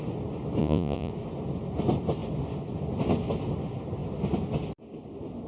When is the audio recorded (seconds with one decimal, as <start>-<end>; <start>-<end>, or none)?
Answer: 0.0-0.6; 1.1-5.5